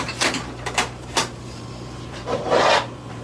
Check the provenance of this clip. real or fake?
fake